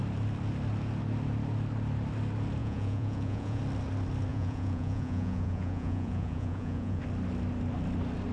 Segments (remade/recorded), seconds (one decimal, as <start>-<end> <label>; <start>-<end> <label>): 0.0-2.6 recorded; 2.6-3.6 remade; 3.6-4.3 recorded; 4.3-7.0 remade; 7.0-8.3 recorded